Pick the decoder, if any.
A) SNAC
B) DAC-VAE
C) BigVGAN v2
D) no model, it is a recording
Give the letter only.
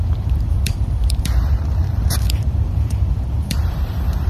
C